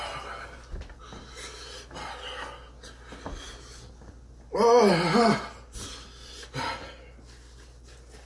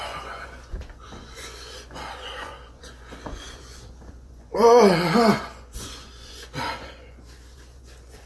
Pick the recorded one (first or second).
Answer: first